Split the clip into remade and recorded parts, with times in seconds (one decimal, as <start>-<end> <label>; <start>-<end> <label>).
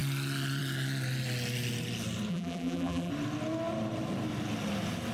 0.0-2.3 recorded; 2.3-3.1 remade; 3.1-5.1 recorded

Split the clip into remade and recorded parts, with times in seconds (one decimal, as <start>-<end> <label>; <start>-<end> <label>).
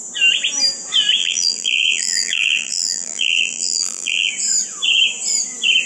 0.0-1.2 recorded; 1.2-4.3 remade; 4.3-5.9 recorded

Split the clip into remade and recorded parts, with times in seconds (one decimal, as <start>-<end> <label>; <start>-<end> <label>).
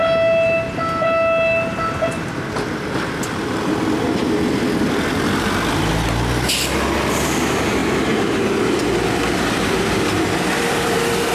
0.0-4.2 recorded; 4.2-5.8 remade; 5.8-11.3 recorded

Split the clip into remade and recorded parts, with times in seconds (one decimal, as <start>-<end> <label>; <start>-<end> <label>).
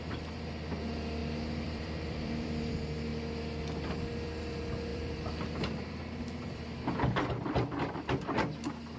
0.0-1.2 recorded; 1.2-2.7 remade; 2.7-4.9 recorded; 4.9-6.8 remade; 6.8-9.0 recorded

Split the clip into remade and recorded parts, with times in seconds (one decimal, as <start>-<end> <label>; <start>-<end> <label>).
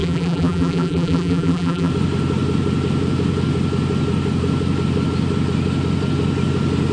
0.0-1.9 remade; 1.9-6.9 recorded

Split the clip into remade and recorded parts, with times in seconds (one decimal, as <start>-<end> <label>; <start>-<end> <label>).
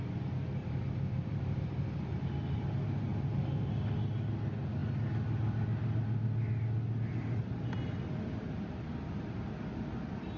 0.0-0.6 recorded; 0.6-2.3 remade; 2.3-10.4 recorded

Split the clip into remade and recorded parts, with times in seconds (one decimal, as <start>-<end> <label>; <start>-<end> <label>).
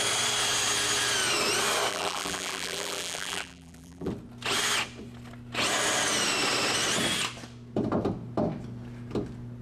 0.0-1.9 recorded; 1.9-4.1 remade; 4.1-9.6 recorded